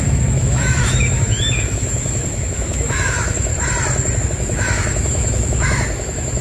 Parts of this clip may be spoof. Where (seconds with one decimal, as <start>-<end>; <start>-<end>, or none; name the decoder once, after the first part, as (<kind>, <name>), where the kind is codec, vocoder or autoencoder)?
0.0-3.5 (autoencoder, DAC-VAE); 4.2-6.4